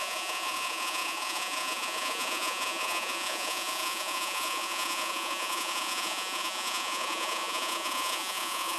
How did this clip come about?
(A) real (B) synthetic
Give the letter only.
B